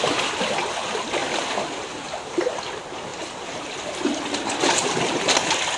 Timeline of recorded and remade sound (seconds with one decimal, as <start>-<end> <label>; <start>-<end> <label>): 0.0-1.2 recorded; 1.2-2.6 remade; 2.6-3.1 recorded; 3.1-3.9 remade; 3.9-5.8 recorded